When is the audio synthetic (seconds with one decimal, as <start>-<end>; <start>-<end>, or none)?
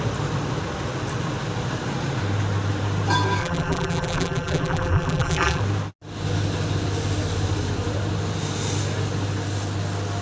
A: 3.4-5.6